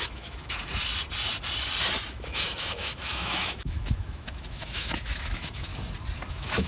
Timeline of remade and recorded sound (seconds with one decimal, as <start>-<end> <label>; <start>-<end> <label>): 0.0-0.6 remade; 0.6-2.1 recorded; 2.1-5.7 remade; 5.7-6.3 recorded; 6.3-6.7 remade

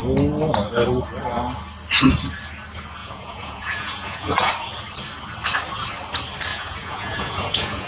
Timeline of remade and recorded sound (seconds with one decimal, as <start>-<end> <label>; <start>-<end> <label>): 0.0-3.0 recorded; 3.0-4.5 remade; 4.5-6.5 recorded; 6.5-7.9 remade

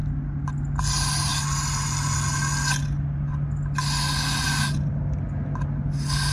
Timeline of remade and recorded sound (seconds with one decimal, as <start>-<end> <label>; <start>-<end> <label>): 0.0-6.3 recorded

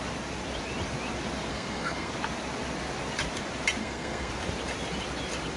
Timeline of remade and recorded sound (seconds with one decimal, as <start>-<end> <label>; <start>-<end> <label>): 0.0-1.5 recorded; 1.5-2.1 remade; 2.1-3.8 recorded; 3.8-4.3 remade; 4.3-5.6 recorded